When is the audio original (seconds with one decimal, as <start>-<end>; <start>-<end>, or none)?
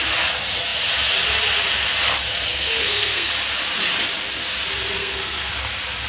0.0-2.5; 3.3-5.0; 5.5-6.1